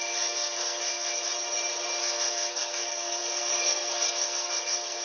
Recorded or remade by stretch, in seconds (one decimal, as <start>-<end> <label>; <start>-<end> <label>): 0.0-1.2 remade; 1.2-2.0 recorded; 2.0-5.0 remade